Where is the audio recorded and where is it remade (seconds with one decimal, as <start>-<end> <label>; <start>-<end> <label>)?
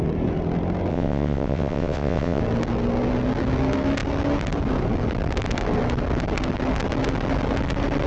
0.0-0.9 recorded; 0.9-2.4 remade; 2.4-8.1 recorded